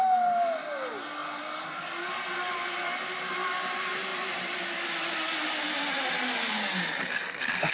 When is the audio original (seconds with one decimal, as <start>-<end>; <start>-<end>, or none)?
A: 0.0-7.7